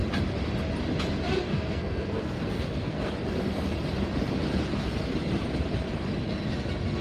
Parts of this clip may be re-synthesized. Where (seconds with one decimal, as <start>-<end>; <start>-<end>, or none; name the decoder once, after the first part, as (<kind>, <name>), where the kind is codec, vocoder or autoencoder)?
1.5-3.1 (codec, SNAC)